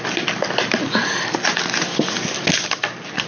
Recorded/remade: recorded